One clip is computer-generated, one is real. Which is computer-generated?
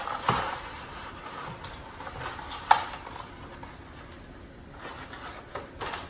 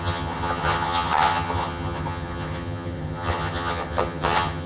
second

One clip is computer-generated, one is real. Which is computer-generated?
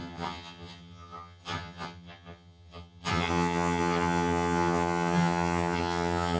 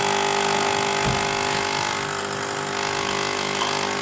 first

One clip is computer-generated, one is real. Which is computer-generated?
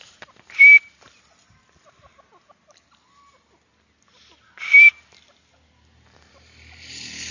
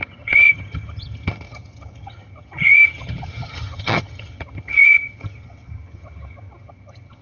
second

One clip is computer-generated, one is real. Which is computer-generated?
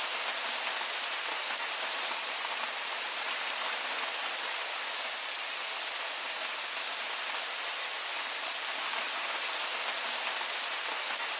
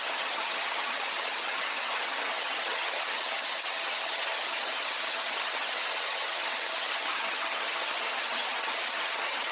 second